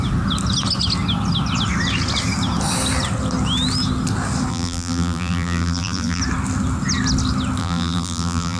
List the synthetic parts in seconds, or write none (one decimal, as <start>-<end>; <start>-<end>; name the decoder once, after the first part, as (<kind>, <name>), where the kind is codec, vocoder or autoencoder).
4.5-6.2 (vocoder, BigVGAN v2); 7.6-8.6

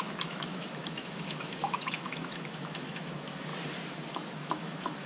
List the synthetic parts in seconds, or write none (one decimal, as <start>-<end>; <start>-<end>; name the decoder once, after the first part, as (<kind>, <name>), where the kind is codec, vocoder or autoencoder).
0.0-3.5 (autoencoder, DAC-VAE); 4.4-5.1

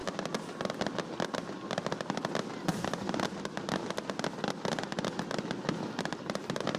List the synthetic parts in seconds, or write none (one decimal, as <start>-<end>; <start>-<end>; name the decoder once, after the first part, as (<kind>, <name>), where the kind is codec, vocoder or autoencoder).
none

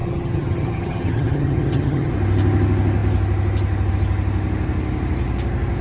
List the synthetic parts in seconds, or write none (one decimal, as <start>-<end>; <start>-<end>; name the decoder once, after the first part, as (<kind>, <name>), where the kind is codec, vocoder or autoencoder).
0.0-2.1 (vocoder, HiFi-GAN)

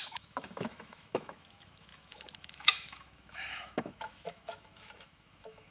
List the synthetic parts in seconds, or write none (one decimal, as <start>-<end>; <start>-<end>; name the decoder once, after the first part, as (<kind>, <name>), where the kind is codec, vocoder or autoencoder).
0.0-5.7 (autoencoder, DAC-VAE)

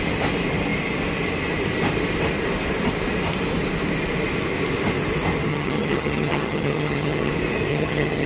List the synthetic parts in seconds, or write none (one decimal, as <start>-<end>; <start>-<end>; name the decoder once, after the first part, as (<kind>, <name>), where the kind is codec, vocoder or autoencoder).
5.5-7.3 (vocoder, HiFi-GAN); 7.7-8.3

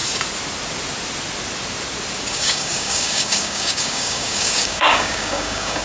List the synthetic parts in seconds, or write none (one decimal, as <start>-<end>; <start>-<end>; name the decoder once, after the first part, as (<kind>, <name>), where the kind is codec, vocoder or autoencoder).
2.3-5.8 (codec, DAC)

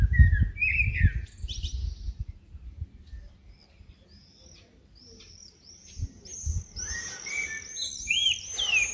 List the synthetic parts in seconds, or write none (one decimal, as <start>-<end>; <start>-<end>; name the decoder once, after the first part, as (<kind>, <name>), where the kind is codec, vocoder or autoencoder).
5.4-6.9 (vocoder, BigVGAN v2)